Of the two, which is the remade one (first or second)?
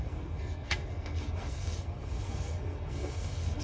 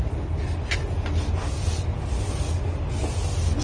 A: first